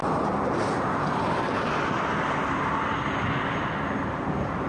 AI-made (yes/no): no